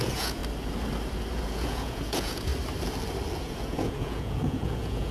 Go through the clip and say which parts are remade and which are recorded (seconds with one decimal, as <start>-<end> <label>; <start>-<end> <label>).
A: 0.0-0.4 remade; 0.4-1.3 recorded; 1.3-2.5 remade; 2.5-3.4 recorded; 3.4-5.1 remade